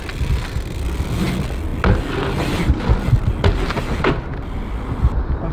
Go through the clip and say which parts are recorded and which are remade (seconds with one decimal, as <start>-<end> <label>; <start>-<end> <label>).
0.0-5.5 recorded

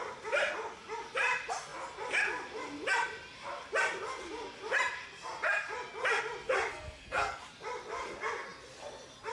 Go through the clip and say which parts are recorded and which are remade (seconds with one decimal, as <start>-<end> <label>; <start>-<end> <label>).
0.0-6.7 recorded; 6.7-7.4 remade; 7.4-9.3 recorded